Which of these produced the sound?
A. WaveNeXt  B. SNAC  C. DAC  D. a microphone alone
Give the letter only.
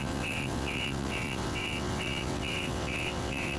A